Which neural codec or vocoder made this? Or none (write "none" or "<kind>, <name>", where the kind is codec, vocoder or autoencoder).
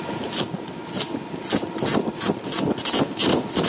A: none